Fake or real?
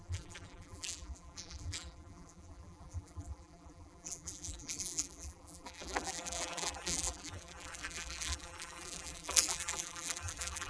fake